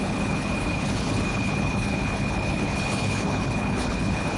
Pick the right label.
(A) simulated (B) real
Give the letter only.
A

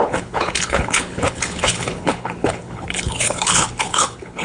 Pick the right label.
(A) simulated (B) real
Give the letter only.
A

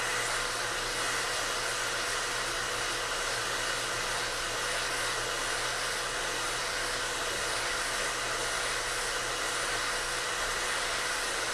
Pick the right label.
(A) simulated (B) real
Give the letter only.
B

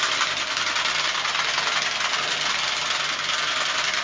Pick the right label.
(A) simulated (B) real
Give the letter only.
B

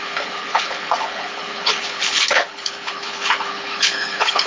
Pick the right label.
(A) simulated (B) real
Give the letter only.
A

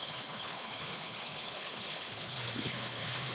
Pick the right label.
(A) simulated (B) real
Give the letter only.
A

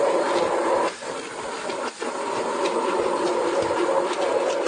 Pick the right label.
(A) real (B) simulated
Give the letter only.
A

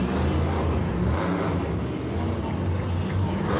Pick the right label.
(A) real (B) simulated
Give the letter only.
A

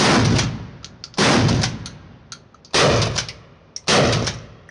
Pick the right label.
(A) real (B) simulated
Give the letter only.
A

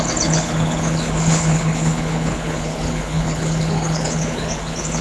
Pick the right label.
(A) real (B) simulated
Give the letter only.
B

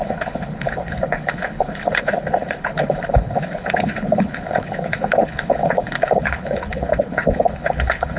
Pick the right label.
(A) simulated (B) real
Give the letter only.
A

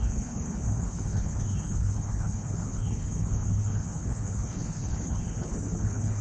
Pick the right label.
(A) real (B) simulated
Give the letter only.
B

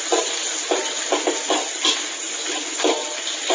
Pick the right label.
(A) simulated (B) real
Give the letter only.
B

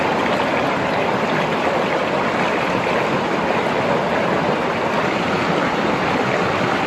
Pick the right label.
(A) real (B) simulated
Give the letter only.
A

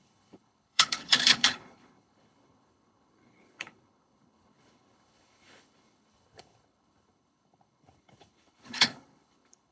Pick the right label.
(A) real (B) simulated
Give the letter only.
B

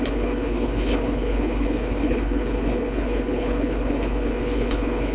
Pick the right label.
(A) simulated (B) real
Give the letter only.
A